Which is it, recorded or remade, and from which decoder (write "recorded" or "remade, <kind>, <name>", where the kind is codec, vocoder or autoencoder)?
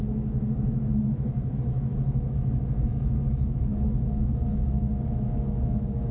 remade, autoencoder, DAC-VAE